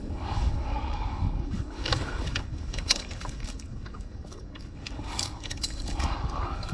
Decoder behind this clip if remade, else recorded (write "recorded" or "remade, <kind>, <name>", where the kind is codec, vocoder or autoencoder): remade, codec, DAC